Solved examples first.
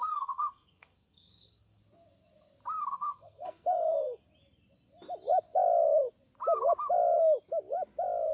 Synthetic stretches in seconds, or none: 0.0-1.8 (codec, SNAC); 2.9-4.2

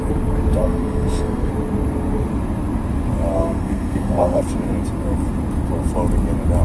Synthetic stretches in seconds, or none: 0.6-1.5 (codec, SNAC); 3.3-4.4

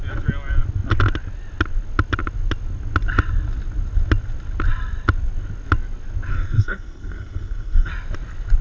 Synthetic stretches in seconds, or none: 6.3-7.9 (codec, SNAC)

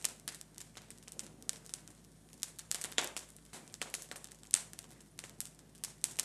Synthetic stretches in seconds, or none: 2.6-4.8 (vocoder, BigVGAN v2)

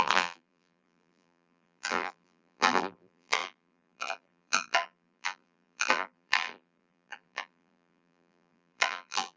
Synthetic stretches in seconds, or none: 0.0-9.4 (vocoder, BigVGAN v2)

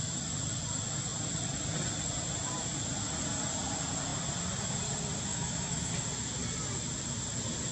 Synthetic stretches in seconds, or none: 5.3-5.9 (autoencoder, DAC-VAE)